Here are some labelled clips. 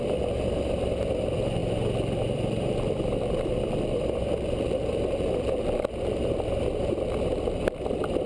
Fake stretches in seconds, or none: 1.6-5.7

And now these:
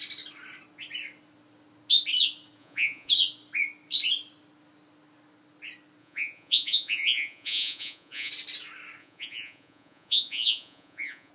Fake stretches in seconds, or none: 2.6-3.1; 6.0-8.3; 9.0-11.3

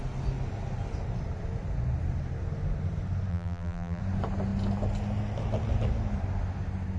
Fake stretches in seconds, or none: 3.3-4.0

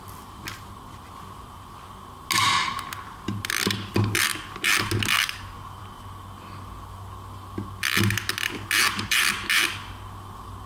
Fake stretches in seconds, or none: none

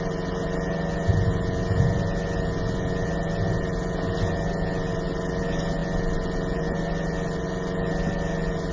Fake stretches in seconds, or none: none

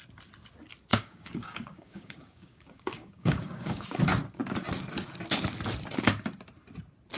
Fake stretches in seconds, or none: 0.9-4.0

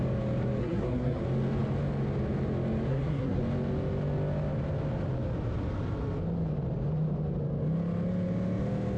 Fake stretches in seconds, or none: 0.6-1.2; 2.9-3.4

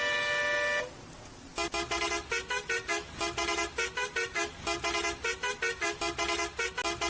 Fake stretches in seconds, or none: none